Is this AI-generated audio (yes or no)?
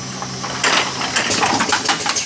no